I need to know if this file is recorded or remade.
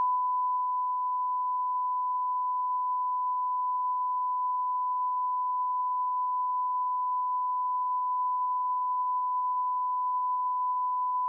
recorded